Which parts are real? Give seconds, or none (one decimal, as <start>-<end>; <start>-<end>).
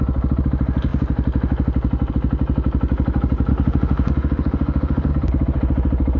0.0-3.5; 5.1-6.2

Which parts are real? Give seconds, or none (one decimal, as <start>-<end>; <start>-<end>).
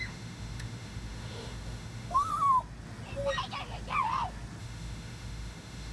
2.3-4.6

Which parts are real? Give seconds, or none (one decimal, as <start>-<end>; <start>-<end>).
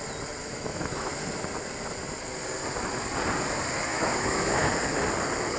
0.0-0.4; 1.1-3.9; 4.7-5.6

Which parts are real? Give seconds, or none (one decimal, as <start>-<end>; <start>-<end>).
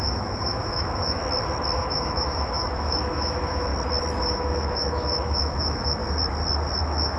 1.2-1.8; 3.7-4.2; 6.0-6.8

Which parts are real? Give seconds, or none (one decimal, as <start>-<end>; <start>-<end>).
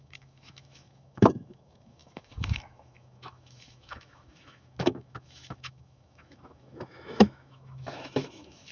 none